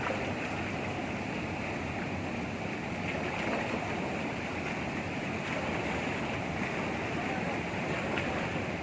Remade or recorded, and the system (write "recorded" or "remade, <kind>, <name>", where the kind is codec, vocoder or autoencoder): recorded